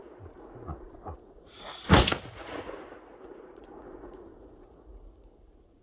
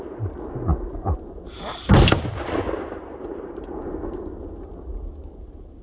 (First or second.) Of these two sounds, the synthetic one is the first